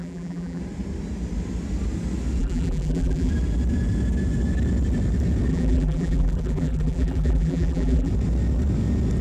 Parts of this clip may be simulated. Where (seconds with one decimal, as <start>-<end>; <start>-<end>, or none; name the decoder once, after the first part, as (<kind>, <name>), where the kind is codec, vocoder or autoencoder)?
0.0-0.6 (vocoder, BigVGAN v2); 2.4-3.3; 5.5-8.1